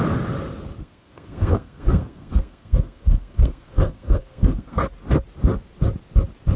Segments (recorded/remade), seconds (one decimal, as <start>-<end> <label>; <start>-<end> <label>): 0.0-0.8 recorded; 0.8-4.8 remade; 4.8-6.6 recorded